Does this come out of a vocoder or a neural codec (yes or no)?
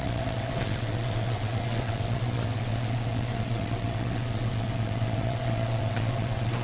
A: yes